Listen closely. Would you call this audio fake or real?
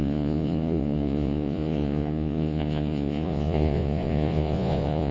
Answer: fake